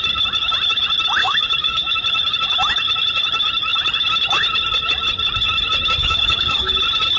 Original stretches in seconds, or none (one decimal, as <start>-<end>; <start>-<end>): 0.0-1.2; 1.9-6.0; 6.8-7.2

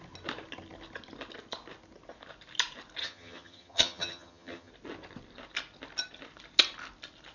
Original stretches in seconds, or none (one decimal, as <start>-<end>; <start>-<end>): 0.0-3.0; 4.7-7.3

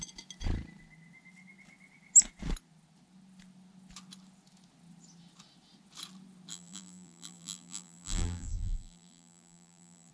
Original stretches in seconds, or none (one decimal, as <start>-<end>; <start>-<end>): 0.0-6.5

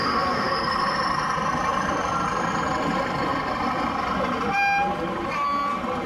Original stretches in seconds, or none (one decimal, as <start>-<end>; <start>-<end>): 0.5-6.1

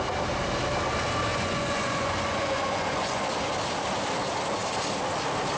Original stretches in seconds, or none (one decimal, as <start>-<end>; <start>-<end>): 0.0-1.3; 3.2-5.6

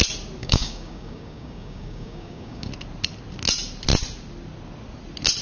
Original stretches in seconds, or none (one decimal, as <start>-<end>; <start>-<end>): 0.0-0.4; 2.7-5.4

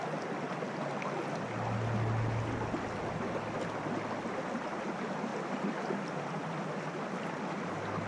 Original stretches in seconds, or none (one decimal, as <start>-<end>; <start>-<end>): 0.0-8.1